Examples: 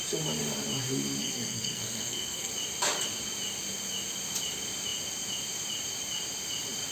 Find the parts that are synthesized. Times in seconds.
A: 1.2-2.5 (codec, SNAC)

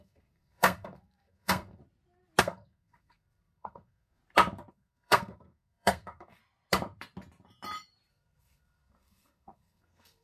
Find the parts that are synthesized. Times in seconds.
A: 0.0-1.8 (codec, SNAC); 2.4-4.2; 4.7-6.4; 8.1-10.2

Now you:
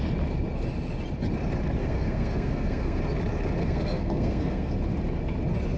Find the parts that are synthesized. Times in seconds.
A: 1.8-3.0 (codec, SNAC); 3.6-4.7